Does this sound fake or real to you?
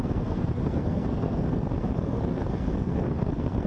fake